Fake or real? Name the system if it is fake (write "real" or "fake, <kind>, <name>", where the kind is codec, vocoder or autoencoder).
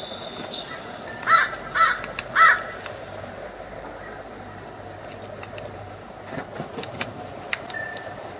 real